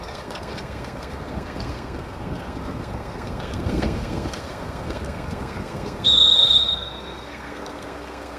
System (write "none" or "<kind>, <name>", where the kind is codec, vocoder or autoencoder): codec, SNAC